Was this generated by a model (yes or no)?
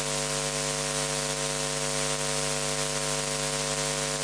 no